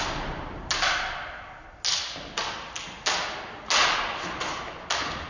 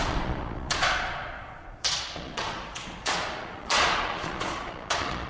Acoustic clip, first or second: first